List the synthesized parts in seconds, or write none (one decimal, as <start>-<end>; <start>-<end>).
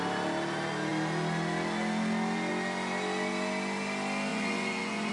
4.3-5.1